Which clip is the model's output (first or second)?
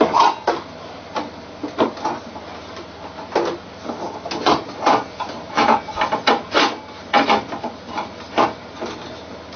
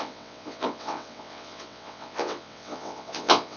second